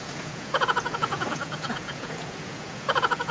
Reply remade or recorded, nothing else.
remade